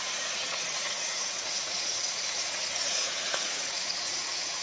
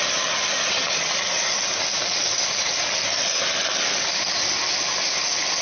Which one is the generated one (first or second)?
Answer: first